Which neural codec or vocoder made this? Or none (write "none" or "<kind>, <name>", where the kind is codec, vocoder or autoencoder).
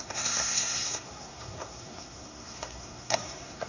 codec, SNAC